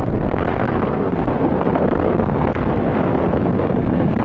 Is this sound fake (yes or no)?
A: yes